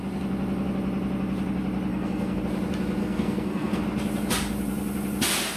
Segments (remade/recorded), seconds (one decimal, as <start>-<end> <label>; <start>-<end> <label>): 0.0-1.9 recorded; 1.9-2.4 remade; 2.4-3.0 recorded; 3.0-3.8 remade; 3.8-5.6 recorded